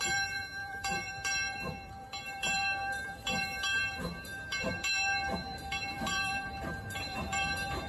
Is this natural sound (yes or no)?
no